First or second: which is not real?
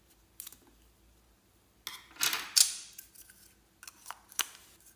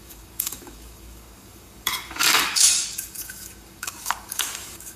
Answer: second